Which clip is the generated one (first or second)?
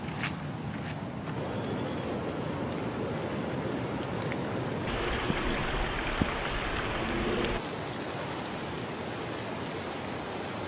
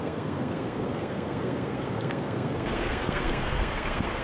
second